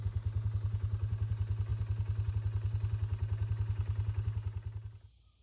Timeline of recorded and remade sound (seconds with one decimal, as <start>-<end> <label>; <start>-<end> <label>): 0.0-5.4 recorded